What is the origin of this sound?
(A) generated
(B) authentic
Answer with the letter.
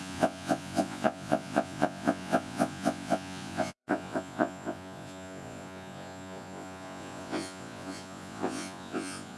A